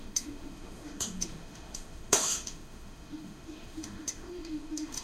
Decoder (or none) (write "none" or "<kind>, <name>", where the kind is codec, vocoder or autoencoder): autoencoder, DAC-VAE